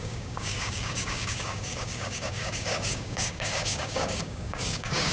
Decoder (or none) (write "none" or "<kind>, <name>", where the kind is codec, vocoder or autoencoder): codec, DAC